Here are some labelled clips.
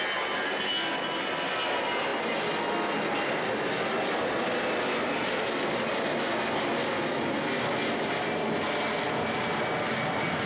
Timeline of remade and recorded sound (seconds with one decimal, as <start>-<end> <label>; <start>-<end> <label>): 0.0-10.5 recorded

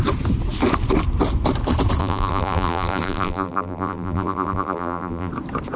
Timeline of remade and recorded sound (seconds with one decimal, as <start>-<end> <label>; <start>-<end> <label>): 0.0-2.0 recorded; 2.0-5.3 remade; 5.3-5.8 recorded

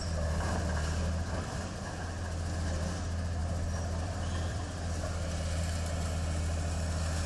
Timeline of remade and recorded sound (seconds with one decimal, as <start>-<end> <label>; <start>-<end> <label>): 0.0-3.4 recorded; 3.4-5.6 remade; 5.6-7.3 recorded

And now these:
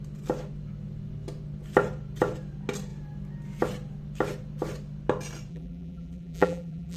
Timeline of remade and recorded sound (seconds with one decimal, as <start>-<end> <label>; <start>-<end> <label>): 0.0-5.5 recorded; 5.5-7.0 remade